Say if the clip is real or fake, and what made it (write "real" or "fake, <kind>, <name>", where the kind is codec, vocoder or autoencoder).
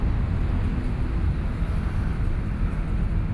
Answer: real